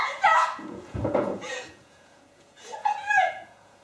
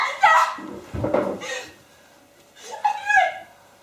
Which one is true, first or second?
second